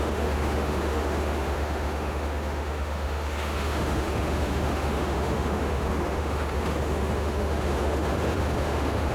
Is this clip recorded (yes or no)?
no